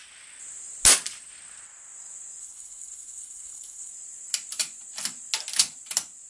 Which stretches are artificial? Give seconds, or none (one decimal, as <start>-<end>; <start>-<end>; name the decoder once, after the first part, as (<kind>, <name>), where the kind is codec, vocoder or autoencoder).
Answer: 2.4-3.9 (codec, HILCodec)

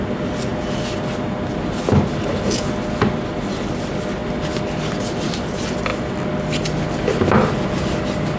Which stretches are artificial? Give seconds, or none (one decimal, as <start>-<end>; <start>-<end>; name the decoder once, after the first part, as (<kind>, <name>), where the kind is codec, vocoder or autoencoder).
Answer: none

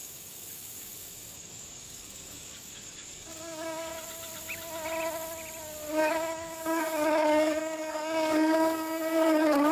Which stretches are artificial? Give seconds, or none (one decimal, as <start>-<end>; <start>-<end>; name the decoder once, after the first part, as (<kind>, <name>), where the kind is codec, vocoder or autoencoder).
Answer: 0.0-3.9 (codec, DAC); 5.9-9.7